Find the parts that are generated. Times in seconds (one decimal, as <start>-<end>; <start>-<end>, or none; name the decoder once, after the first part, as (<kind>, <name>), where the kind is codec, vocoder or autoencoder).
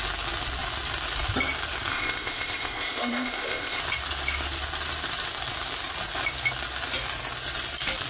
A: 1.9-3.8 (codec, ZipCodec)